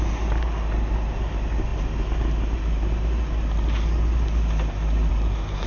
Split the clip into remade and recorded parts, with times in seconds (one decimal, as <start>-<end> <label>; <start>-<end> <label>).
0.0-5.7 recorded